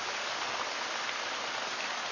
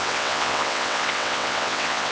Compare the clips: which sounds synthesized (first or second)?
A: second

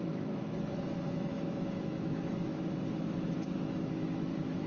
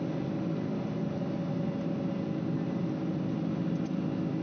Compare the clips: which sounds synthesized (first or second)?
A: first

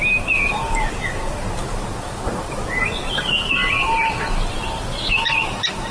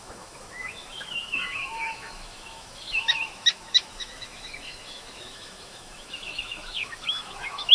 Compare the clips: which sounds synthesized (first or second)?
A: second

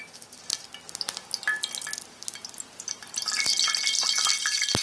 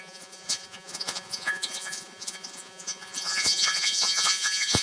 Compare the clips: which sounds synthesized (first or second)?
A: second